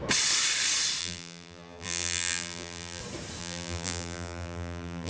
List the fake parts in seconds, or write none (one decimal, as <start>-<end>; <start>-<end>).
1.0-3.0; 3.4-5.1